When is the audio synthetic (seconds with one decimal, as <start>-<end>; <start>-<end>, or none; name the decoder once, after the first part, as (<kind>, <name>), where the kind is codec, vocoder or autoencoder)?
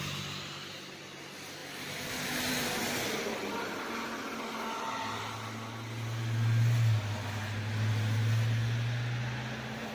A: none